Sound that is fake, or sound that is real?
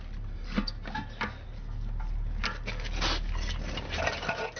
real